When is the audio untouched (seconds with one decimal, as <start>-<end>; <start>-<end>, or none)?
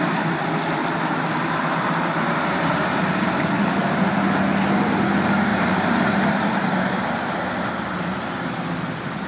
0.0-0.8; 5.0-5.5; 6.3-9.3